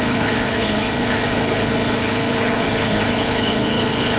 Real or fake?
fake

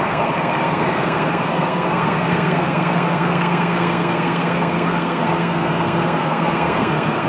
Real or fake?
fake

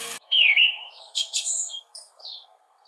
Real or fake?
fake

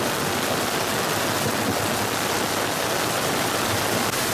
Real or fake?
real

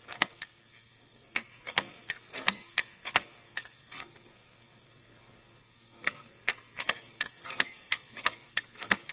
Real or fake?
fake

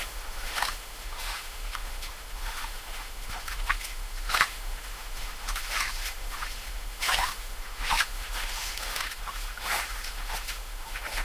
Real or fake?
fake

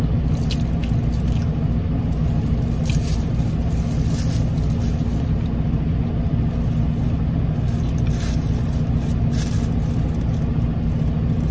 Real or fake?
real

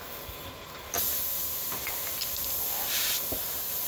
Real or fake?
real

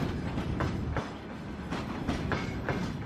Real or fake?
real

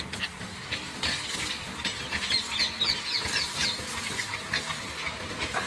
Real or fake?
real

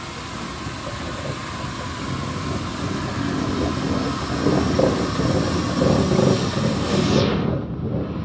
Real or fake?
real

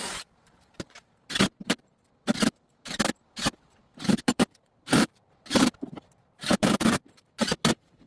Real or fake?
fake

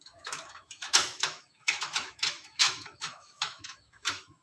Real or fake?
fake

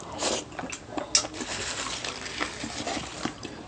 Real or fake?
real